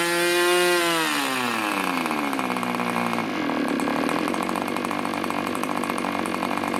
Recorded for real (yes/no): yes